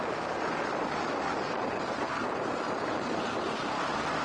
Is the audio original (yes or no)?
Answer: yes